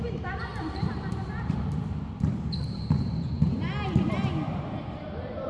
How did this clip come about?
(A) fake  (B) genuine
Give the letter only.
A